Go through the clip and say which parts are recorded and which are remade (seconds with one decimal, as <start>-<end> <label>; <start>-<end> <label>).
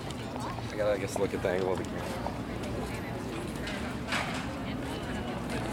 0.0-0.9 remade; 0.9-1.5 recorded; 1.5-5.7 remade